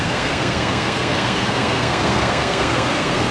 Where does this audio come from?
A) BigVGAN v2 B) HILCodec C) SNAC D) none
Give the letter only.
C